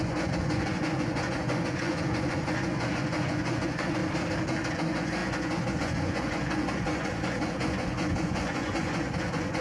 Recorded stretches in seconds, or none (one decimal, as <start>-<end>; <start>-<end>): 4.0-4.7